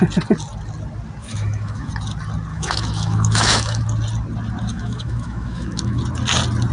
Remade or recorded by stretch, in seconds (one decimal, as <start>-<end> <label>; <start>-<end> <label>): 0.0-1.2 recorded; 1.2-1.9 remade; 1.9-2.5 recorded; 2.5-3.8 remade; 3.8-4.7 recorded; 4.7-6.0 remade; 6.0-6.7 recorded